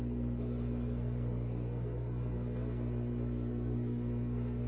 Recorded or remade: remade